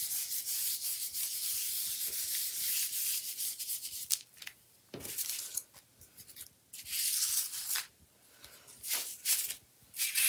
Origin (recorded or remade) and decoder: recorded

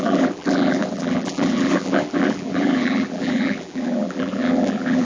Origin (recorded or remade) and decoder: remade, vocoder, BigVGAN v2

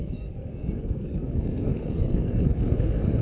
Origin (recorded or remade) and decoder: remade, codec, SNAC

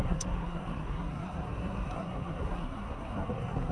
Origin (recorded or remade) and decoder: remade, codec, SNAC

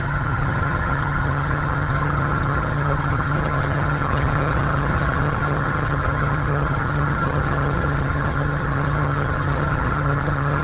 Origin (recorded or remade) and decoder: remade, vocoder, HiFi-GAN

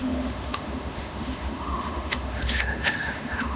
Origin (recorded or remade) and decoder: remade, autoencoder, DAC-VAE